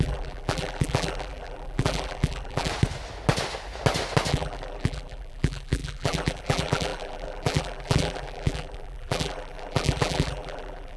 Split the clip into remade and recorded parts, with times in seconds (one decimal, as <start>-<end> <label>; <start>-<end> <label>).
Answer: 0.0-2.7 remade; 2.7-4.3 recorded; 4.3-11.0 remade